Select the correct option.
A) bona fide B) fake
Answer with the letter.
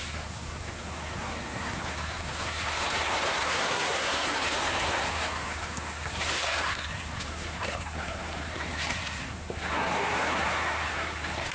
B